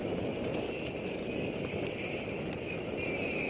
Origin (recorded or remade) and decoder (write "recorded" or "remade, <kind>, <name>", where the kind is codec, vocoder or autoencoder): recorded